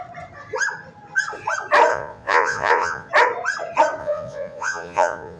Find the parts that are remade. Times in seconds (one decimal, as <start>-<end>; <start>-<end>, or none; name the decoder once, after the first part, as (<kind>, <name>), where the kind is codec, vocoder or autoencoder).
1.9-3.1 (vocoder, Vocos); 4.0-5.4